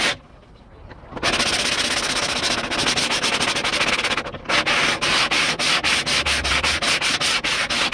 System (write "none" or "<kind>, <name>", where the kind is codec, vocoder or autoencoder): none